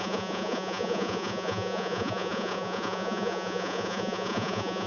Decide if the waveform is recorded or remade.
remade